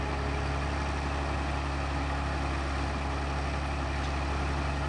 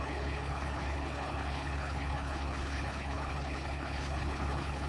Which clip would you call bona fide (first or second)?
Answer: first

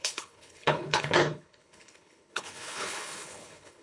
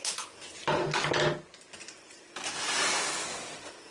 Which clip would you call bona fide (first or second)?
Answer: second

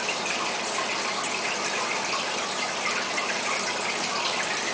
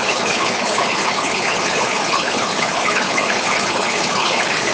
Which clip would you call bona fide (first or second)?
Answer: first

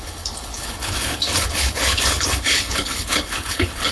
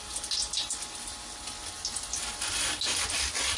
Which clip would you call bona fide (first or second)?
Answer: second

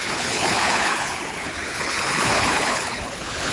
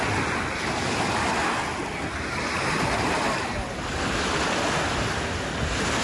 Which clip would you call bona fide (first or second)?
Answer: second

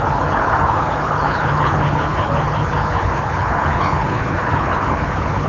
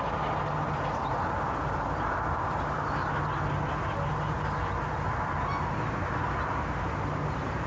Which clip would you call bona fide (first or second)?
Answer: second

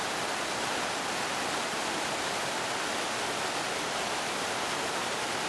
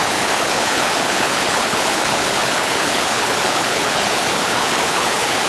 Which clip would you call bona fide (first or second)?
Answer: first